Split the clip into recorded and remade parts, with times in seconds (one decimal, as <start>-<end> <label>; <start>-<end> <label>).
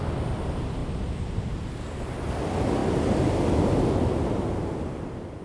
0.0-5.4 recorded